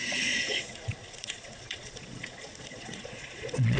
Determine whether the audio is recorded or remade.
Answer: remade